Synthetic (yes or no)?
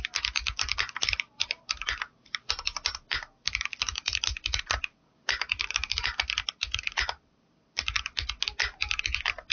no